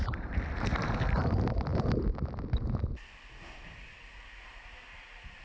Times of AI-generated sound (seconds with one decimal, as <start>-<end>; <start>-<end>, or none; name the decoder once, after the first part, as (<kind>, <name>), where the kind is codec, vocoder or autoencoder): none